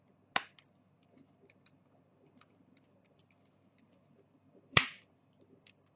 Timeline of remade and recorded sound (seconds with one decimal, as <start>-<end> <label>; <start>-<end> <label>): 0.0-2.1 recorded; 2.1-5.3 remade; 5.3-6.0 recorded